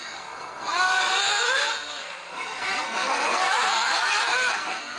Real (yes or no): no